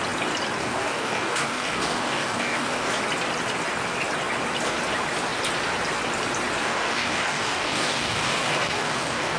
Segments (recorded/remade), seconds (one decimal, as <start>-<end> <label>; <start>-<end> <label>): 0.0-0.6 recorded; 0.6-2.9 remade; 2.9-6.6 recorded; 6.6-9.4 remade